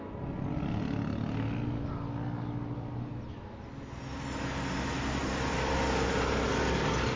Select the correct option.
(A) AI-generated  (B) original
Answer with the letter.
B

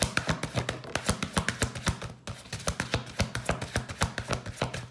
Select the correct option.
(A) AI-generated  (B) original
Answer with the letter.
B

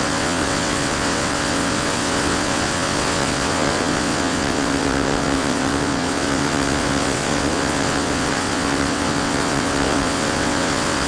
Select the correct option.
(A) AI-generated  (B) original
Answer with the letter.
A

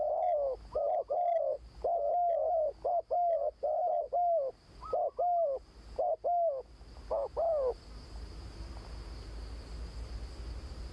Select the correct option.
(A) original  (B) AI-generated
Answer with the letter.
A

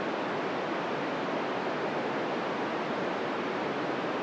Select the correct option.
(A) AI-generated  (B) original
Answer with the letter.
B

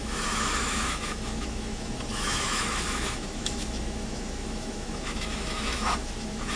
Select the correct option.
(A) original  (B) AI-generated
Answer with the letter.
B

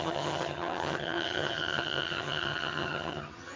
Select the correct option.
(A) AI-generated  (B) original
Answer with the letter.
A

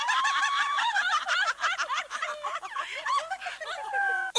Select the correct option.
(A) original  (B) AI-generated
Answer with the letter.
B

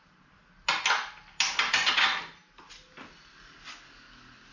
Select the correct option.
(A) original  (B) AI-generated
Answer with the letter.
A